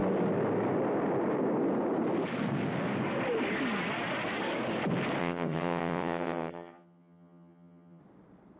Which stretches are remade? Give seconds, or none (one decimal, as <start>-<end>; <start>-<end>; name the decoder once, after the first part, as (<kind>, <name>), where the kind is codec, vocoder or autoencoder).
5.2-8.0 (vocoder, HiFi-GAN)